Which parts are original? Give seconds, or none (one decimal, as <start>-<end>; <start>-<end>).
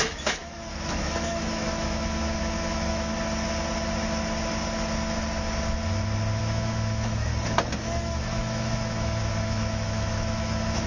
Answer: 3.1-6.4; 7.3-7.8